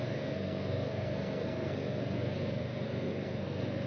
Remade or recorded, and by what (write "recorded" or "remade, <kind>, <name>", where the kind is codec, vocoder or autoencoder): remade, codec, SNAC